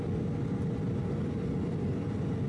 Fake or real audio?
real